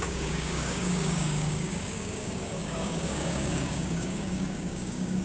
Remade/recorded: remade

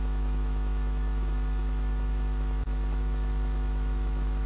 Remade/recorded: remade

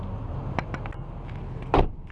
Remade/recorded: recorded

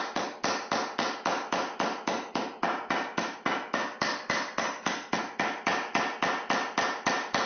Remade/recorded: recorded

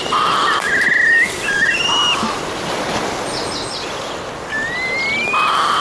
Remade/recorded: recorded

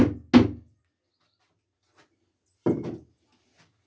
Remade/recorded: recorded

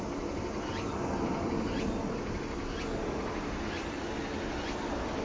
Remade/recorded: recorded